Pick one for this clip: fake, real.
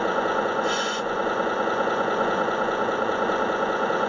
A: fake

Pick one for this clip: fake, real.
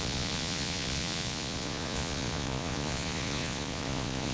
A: fake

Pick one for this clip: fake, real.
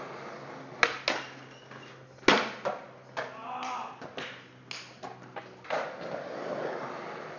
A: real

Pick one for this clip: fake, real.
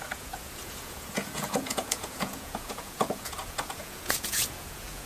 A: fake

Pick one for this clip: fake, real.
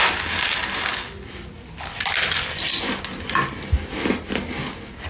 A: real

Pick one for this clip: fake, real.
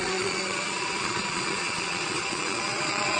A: fake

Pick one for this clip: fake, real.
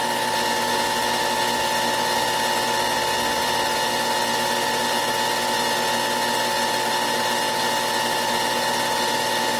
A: real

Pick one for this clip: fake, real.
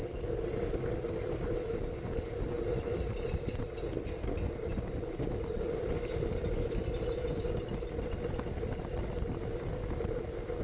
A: real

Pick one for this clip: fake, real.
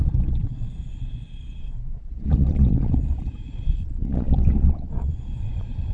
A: fake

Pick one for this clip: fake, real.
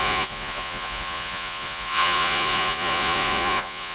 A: fake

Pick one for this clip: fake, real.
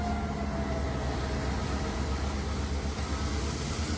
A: real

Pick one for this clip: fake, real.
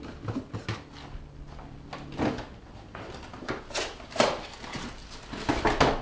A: real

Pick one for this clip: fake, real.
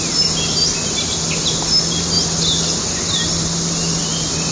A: real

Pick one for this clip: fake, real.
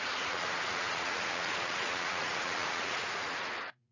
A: fake